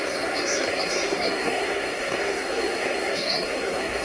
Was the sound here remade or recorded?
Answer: remade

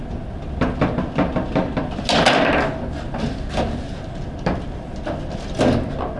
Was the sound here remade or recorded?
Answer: recorded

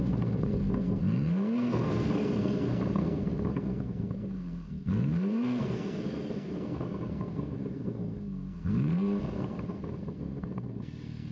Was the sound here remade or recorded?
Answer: remade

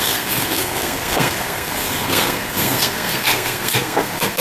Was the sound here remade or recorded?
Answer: remade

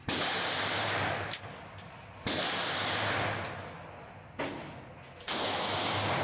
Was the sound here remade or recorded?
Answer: recorded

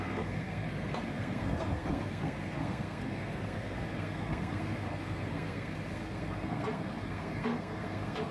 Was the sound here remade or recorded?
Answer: remade